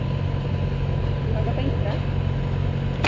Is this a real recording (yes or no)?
yes